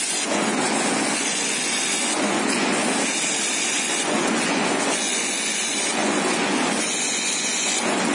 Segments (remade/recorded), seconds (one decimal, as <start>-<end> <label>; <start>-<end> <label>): 0.0-2.8 remade; 2.8-3.7 recorded; 3.7-8.1 remade